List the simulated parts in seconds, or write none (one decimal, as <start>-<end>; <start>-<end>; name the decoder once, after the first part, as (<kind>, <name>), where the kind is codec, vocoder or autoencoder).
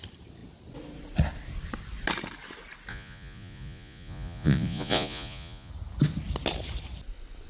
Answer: 2.9-5.7 (vocoder, Vocos)